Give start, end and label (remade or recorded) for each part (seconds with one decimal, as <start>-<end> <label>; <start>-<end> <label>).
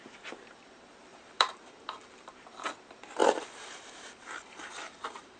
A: 0.0-1.1 recorded; 1.1-2.3 remade; 2.3-3.2 recorded; 3.2-5.4 remade